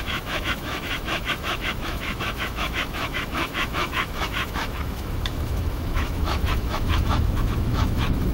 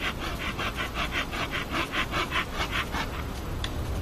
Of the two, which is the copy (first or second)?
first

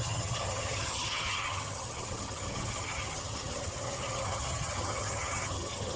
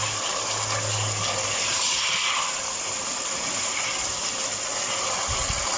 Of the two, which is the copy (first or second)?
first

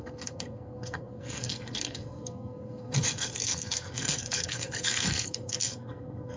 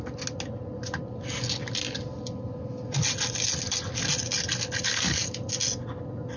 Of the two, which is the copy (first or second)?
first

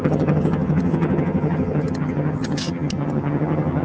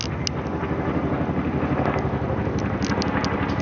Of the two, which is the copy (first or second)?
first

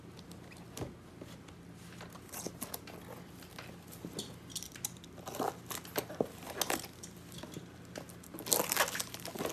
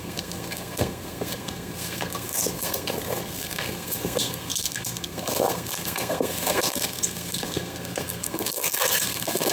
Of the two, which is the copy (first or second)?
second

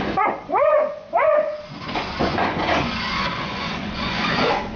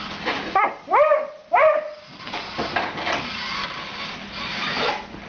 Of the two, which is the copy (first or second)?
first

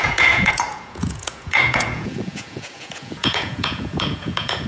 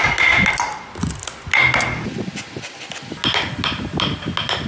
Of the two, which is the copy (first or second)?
first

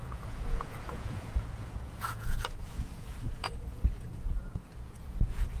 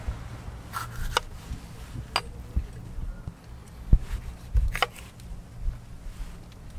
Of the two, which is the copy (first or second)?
first